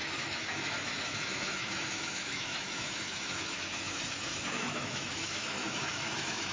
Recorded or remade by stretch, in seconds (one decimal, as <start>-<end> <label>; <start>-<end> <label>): 0.0-6.5 remade